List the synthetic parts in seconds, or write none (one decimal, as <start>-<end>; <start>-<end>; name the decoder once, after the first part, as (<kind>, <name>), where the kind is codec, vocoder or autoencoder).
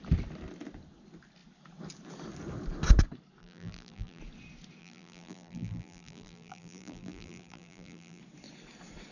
3.4-4.2 (vocoder, BigVGAN v2); 4.8-8.2